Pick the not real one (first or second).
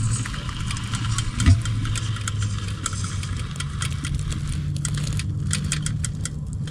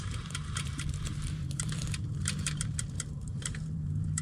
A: second